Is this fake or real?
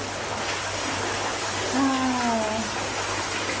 real